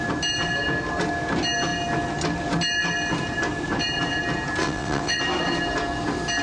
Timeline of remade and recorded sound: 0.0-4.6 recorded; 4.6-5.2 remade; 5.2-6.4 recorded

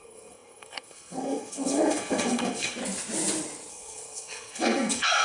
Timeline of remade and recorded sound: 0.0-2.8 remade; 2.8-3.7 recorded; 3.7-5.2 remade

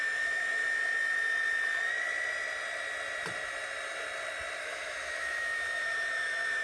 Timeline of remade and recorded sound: 0.0-0.6 remade; 0.6-4.6 recorded; 4.6-6.6 remade

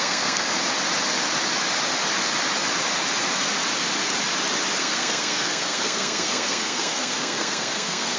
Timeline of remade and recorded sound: 0.0-0.5 remade; 0.5-4.8 recorded; 4.8-8.2 remade

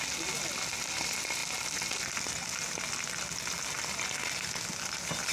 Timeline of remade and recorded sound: 0.0-5.3 recorded

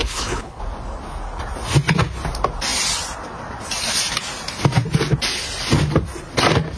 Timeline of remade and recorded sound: 0.0-0.6 remade; 0.6-6.8 recorded

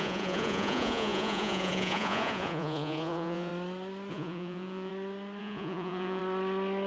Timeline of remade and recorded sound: 0.0-3.5 remade; 3.5-4.1 recorded; 4.1-4.9 remade; 4.9-5.4 recorded; 5.4-6.2 remade; 6.2-6.9 recorded